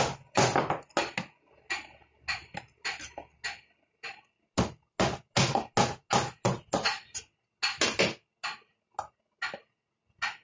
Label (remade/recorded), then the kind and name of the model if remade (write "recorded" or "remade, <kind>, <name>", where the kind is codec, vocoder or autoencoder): recorded